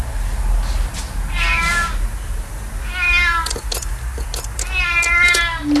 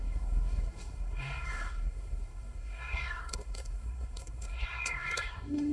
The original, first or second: first